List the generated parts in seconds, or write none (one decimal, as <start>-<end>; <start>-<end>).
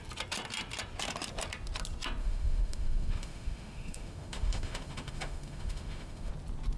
2.2-6.3